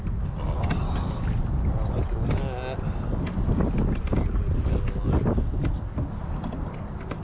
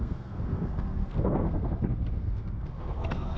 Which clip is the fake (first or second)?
second